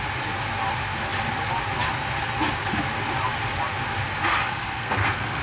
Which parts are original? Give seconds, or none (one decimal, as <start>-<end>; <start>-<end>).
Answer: 0.0-4.3